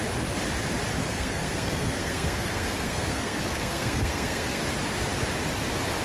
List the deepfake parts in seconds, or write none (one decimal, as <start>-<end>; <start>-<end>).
1.0-4.6